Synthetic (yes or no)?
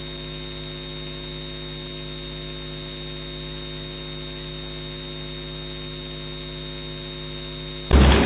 no